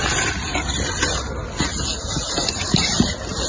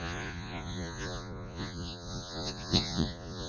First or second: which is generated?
second